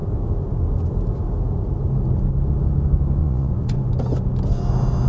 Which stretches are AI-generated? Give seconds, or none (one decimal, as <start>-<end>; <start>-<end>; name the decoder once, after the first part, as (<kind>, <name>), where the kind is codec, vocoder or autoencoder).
3.2-3.9 (vocoder, Vocos)